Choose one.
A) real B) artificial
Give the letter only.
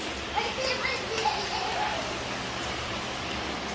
A